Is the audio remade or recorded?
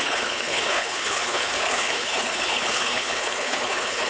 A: remade